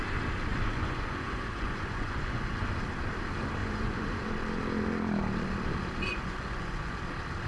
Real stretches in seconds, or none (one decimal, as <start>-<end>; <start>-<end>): 0.0-0.5; 2.7-3.6; 4.2-6.1; 7.0-7.5